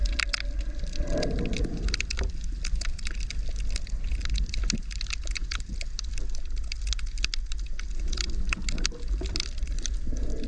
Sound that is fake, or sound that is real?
real